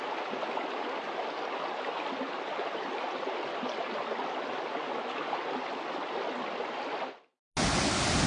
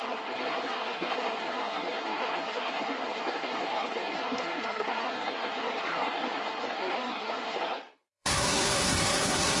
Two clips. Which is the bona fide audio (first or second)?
first